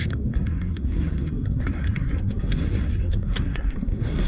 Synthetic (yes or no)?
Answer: yes